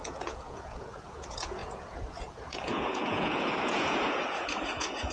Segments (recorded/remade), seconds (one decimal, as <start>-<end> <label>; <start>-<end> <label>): 0.0-5.1 remade